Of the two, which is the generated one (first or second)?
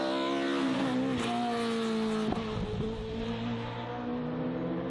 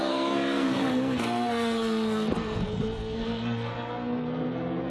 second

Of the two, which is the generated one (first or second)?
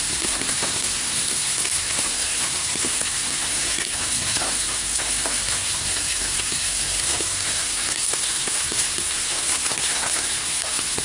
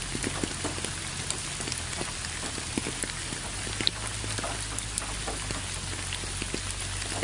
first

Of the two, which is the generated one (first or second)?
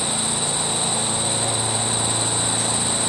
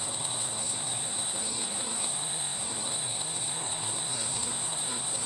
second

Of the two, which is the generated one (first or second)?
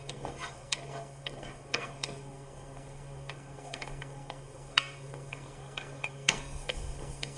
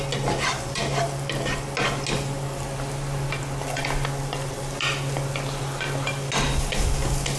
first